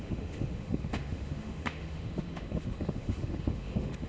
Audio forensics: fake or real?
fake